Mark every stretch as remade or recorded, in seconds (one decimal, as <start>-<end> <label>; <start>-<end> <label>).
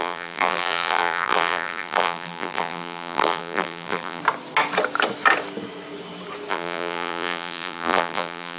0.0-4.2 remade; 4.2-6.5 recorded; 6.5-8.6 remade